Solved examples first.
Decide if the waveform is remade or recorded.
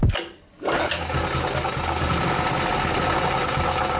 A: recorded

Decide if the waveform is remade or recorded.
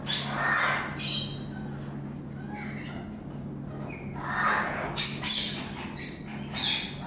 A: recorded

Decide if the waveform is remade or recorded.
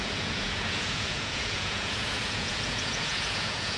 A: remade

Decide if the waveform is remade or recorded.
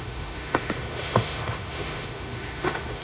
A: remade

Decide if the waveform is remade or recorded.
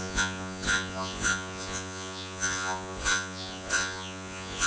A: remade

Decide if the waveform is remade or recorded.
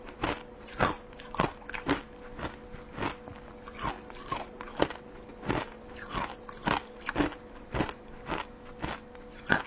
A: recorded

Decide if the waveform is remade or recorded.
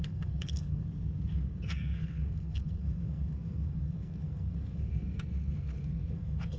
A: remade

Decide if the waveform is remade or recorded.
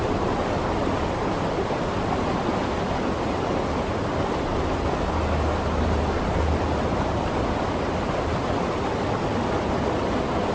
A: recorded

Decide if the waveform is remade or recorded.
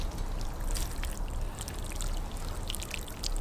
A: recorded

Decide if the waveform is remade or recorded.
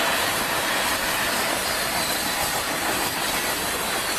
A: remade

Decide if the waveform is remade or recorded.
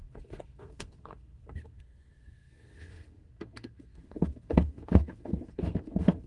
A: remade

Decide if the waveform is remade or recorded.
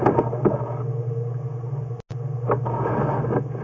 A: recorded